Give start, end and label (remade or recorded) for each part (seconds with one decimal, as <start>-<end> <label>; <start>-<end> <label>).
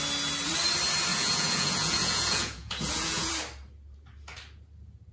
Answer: 0.0-1.1 recorded; 1.1-3.3 remade; 3.3-5.1 recorded